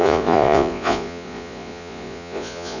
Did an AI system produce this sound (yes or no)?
yes